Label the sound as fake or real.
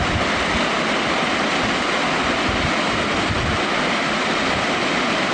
real